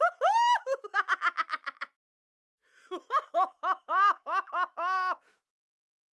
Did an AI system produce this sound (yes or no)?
yes